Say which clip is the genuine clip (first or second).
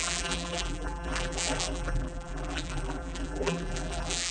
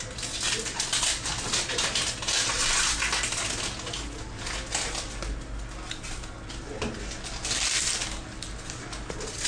second